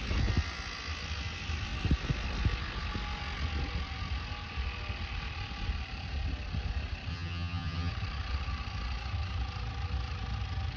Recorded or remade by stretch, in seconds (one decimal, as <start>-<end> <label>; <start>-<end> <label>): 0.0-7.1 recorded; 7.1-7.9 remade; 7.9-10.8 recorded